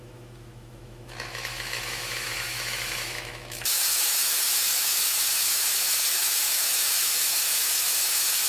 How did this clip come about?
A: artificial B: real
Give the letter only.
A